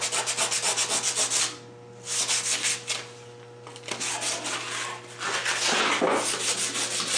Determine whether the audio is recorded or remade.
recorded